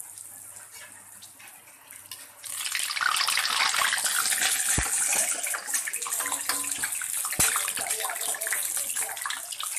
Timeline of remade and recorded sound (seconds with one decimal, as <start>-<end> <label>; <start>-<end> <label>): 0.0-9.8 recorded